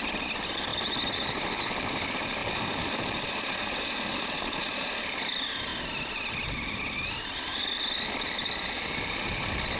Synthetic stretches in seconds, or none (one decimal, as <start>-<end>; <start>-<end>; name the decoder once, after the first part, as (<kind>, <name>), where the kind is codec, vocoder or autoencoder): none